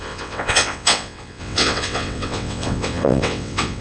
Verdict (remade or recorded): remade